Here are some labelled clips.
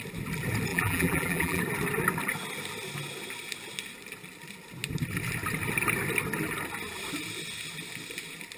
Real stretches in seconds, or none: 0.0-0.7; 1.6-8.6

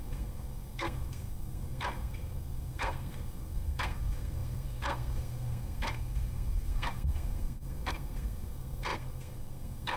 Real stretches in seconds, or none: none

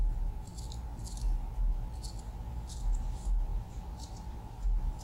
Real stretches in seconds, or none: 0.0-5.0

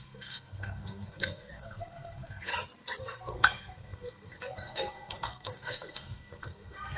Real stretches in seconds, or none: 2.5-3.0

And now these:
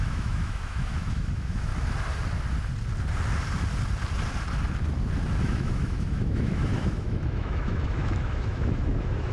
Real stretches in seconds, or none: 1.7-5.4

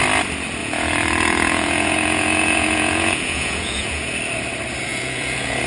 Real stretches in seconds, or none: 0.0-0.6; 4.0-4.9

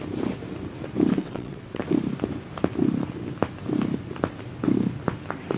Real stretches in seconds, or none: 0.0-1.2; 1.8-5.6

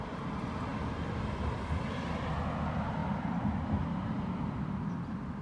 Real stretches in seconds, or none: 0.0-3.0